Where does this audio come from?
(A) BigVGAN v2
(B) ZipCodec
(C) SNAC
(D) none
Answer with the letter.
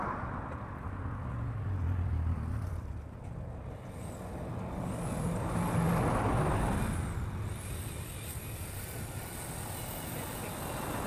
D